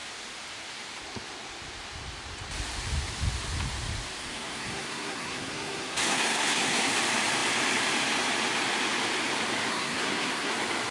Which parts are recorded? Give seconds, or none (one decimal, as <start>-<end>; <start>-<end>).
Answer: 0.0-4.2; 6.9-9.7; 10.5-10.9